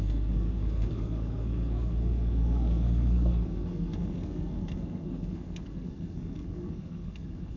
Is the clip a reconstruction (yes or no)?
yes